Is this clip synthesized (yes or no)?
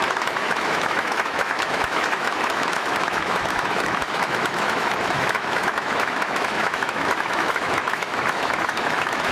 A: yes